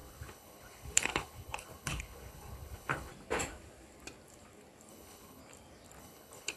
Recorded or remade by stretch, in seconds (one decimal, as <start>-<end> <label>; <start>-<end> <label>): 0.0-3.1 remade; 3.1-4.9 recorded; 4.9-5.4 remade; 5.4-6.0 recorded; 6.0-6.6 remade